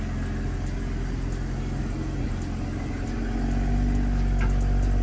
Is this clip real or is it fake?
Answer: real